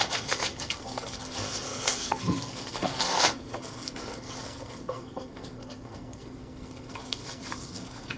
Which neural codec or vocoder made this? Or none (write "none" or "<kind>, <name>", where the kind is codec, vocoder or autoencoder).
codec, SNAC